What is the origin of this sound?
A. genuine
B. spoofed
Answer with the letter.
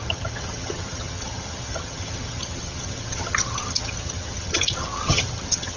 B